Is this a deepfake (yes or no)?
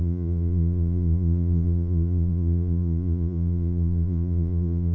yes